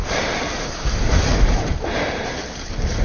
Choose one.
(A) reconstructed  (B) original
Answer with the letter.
A